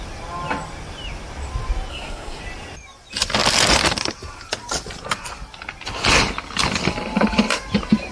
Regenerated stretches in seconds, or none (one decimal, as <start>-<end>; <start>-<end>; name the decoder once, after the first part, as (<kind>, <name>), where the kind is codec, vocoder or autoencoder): 1.9-2.4 (codec, SNAC)